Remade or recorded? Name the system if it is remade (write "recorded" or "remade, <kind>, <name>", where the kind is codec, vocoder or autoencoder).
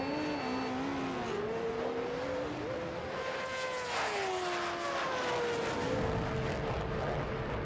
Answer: recorded